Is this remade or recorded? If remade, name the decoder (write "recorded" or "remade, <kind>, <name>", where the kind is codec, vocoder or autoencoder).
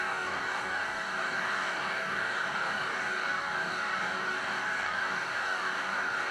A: remade, codec, DAC